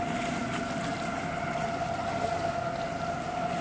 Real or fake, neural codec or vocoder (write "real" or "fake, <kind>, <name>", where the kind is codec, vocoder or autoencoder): real